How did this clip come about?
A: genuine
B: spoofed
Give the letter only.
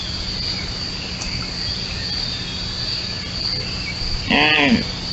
A